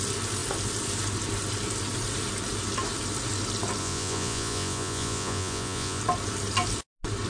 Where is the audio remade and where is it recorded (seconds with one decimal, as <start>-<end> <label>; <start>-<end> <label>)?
0.0-3.8 recorded; 3.8-6.0 remade; 6.0-7.3 recorded